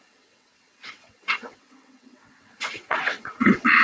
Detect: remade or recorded remade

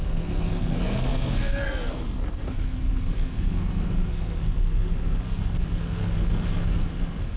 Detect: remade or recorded remade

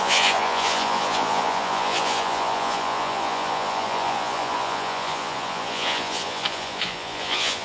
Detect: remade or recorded remade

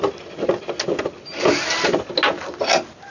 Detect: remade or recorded recorded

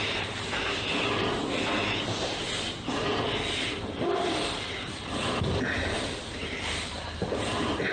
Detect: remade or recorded remade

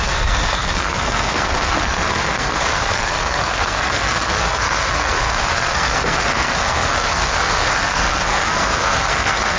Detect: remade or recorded remade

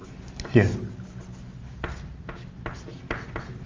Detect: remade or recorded recorded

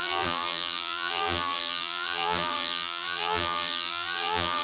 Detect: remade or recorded remade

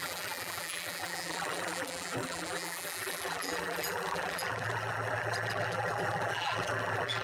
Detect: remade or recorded remade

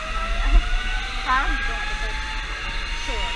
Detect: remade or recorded recorded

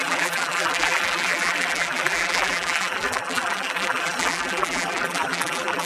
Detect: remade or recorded remade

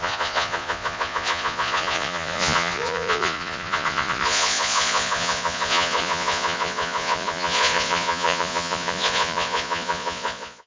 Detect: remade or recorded remade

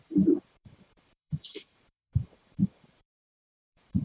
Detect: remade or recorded remade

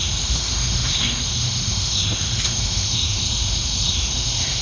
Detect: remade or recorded remade